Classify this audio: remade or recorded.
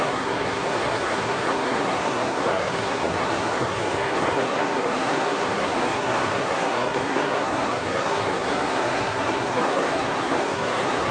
remade